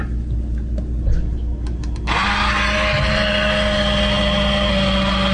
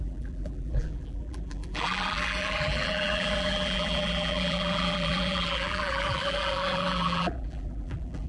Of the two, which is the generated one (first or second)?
second